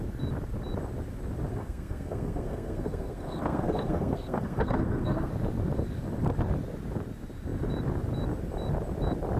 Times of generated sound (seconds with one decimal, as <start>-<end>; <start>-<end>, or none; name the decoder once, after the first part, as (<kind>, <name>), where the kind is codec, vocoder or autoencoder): 1.5-5.3 (codec, SNAC)